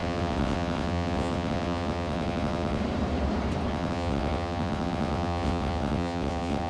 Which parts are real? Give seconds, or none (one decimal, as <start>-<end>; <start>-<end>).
2.8-3.7